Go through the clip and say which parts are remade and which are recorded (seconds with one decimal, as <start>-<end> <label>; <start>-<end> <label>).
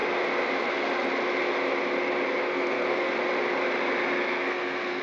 0.0-2.4 recorded; 2.4-3.1 remade; 3.1-4.2 recorded; 4.2-5.0 remade